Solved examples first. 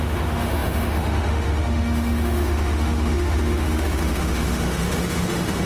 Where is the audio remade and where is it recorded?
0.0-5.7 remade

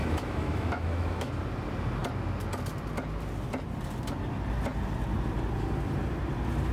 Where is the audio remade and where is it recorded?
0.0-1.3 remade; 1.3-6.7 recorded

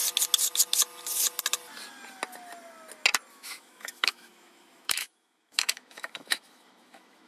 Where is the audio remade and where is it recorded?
0.0-3.3 recorded; 3.3-7.3 remade

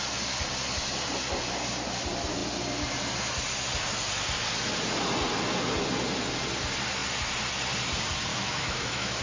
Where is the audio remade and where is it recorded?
0.0-8.3 recorded; 8.3-9.2 remade

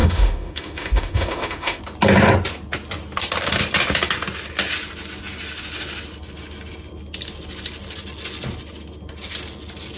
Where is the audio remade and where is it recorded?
0.0-1.8 remade; 1.8-10.0 recorded

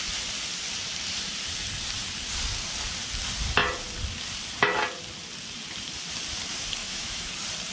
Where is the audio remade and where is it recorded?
0.0-6.8 recorded; 6.8-7.3 remade; 7.3-7.7 recorded

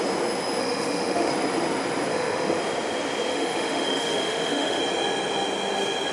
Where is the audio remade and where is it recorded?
0.0-0.6 recorded; 0.6-1.3 remade; 1.3-2.1 recorded; 2.1-2.6 remade; 2.6-3.3 recorded; 3.3-4.8 remade; 4.8-6.1 recorded

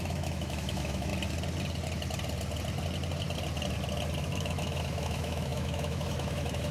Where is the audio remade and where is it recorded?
0.0-1.1 remade; 1.1-4.2 recorded; 4.2-6.7 remade